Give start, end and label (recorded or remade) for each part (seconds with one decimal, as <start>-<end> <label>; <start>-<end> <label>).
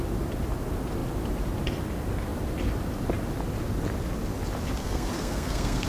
0.0-4.8 recorded; 4.8-5.9 remade